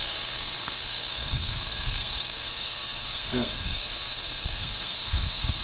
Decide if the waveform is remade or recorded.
remade